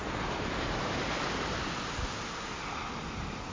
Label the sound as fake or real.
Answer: real